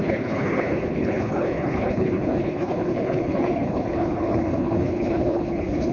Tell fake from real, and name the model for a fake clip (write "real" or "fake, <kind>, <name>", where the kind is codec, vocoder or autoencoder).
fake, codec, HILCodec